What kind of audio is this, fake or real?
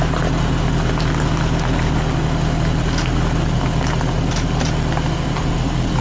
real